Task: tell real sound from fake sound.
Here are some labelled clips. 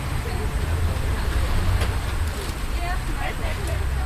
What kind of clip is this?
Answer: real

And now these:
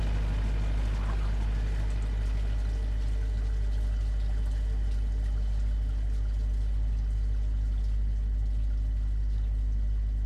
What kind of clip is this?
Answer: real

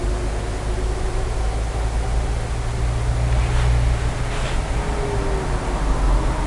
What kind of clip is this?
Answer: real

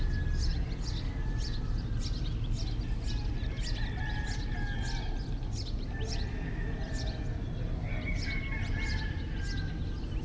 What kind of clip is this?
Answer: real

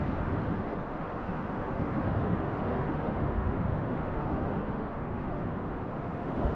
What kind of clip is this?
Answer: fake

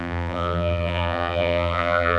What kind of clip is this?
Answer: fake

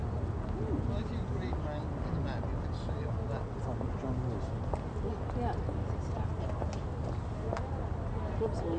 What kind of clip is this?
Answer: real